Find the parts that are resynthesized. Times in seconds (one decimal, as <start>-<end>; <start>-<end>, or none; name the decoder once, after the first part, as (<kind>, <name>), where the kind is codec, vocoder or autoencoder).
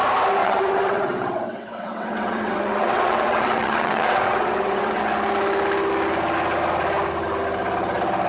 0.4-5.0 (vocoder, WaveNeXt)